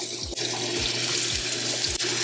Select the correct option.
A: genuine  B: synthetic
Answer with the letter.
A